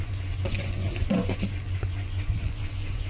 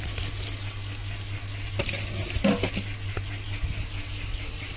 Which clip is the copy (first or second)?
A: first